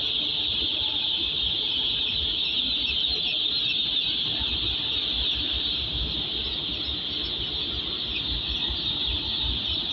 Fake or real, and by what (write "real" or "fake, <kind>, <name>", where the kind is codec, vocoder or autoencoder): real